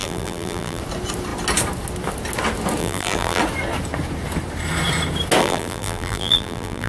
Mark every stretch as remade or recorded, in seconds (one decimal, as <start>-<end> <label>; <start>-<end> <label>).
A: 0.0-0.8 remade; 0.8-2.8 recorded; 2.8-3.4 remade; 3.4-5.4 recorded; 5.4-6.9 remade